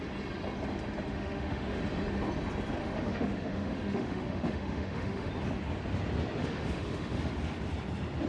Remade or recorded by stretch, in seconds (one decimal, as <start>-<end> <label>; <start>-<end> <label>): 0.0-1.1 recorded; 1.1-1.8 remade; 1.8-2.8 recorded; 2.8-5.3 remade; 5.3-6.4 recorded; 6.4-7.2 remade; 7.2-8.3 recorded